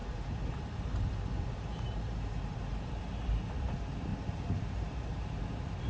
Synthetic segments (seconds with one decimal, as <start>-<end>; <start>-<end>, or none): 0.0-4.1; 4.6-5.9